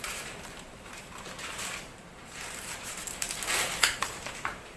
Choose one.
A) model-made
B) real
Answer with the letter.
A